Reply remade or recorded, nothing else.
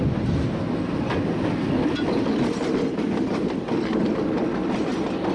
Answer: recorded